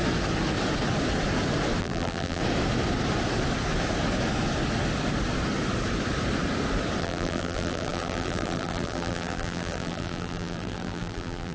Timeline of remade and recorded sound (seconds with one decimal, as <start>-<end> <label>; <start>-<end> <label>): 0.0-1.8 recorded; 1.8-2.4 remade; 2.4-7.0 recorded; 7.0-11.5 remade